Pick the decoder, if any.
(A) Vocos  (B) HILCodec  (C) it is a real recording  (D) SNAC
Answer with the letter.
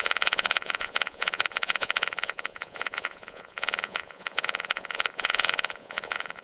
A